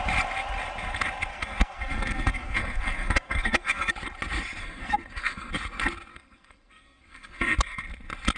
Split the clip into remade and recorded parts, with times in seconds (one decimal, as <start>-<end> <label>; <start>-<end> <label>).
0.0-1.3 recorded; 1.3-3.9 remade; 3.9-4.6 recorded; 4.6-5.5 remade; 5.5-6.1 recorded; 6.1-7.8 remade; 7.8-8.4 recorded